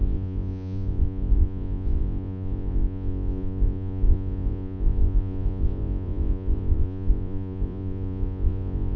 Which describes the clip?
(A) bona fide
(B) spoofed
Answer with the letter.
B